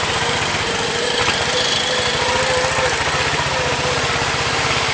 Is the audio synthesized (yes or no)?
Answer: no